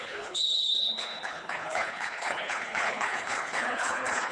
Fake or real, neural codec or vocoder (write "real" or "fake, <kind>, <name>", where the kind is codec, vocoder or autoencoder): fake, codec, HILCodec